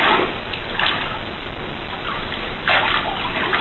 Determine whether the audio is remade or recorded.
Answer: recorded